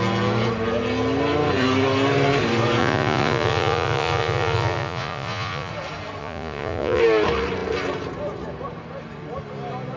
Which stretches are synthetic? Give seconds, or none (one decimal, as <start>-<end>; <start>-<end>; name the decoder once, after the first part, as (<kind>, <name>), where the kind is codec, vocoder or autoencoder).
2.8-5.7 (vocoder, Vocos); 6.2-7.0